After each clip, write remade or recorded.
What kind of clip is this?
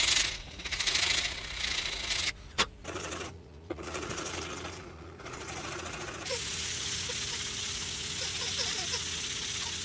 remade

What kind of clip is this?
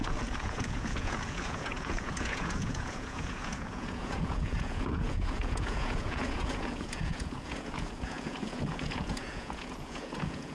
remade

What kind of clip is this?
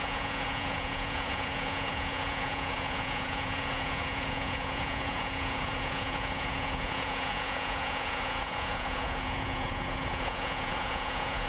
remade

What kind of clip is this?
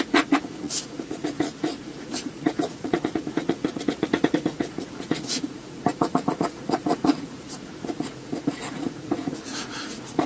remade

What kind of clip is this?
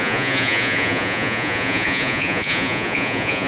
remade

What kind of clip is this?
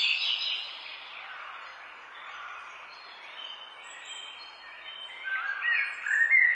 recorded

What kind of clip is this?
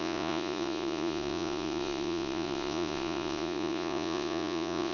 remade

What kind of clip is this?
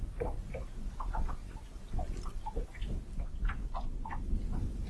recorded